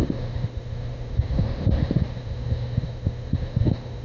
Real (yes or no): no